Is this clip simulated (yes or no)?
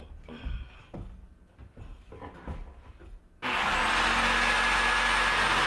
no